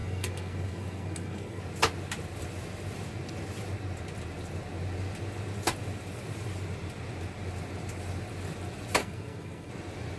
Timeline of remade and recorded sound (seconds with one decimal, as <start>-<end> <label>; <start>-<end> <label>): 0.0-1.6 remade; 1.6-9.0 recorded; 9.0-9.7 remade; 9.7-10.2 recorded